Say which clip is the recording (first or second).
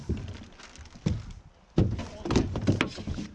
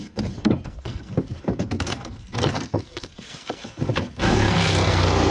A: first